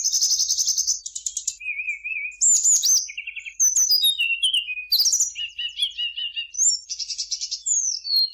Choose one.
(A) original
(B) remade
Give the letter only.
A